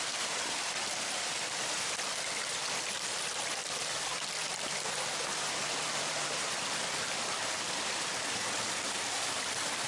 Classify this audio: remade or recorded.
remade